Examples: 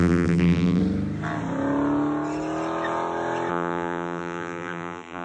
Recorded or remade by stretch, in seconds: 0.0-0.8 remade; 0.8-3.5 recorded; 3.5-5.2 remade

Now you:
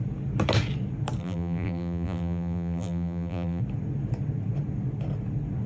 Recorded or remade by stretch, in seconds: 0.0-1.2 recorded; 1.2-3.6 remade; 3.6-5.7 recorded

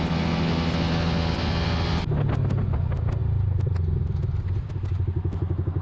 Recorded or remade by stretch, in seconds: 0.0-5.8 recorded

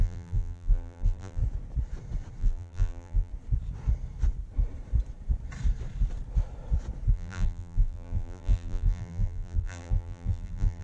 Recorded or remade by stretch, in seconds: 0.0-1.4 remade; 1.4-2.4 recorded; 2.4-3.3 remade; 3.3-7.1 recorded; 7.1-10.8 remade

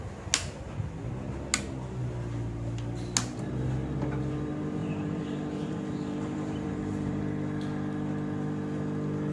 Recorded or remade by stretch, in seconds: 0.0-4.8 recorded; 4.8-7.2 remade; 7.2-9.3 recorded

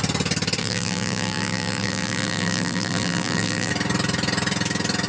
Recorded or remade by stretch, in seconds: 0.0-0.6 recorded; 0.6-3.7 remade; 3.7-5.1 recorded

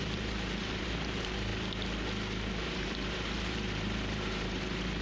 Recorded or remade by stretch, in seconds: 0.0-1.5 remade; 1.5-2.6 recorded; 2.6-5.0 remade